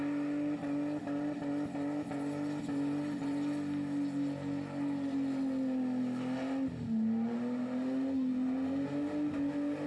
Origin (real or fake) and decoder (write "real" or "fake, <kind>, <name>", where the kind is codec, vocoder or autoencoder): real